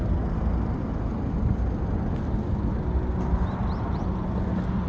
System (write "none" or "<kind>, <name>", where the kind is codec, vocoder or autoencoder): none